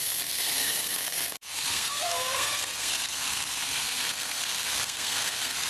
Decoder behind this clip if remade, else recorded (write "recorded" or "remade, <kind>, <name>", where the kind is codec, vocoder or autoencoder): remade, codec, SNAC